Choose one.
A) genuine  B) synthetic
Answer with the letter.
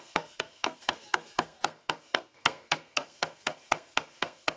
B